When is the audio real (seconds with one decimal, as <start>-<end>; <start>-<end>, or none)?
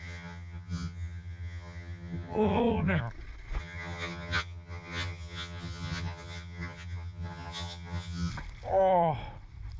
3.0-3.6; 8.3-9.8